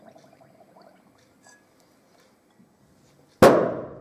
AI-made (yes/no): no